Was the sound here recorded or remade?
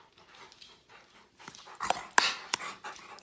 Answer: recorded